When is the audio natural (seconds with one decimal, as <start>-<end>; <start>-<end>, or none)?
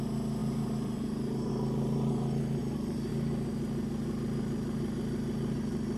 0.0-0.4; 1.5-2.6; 3.1-6.0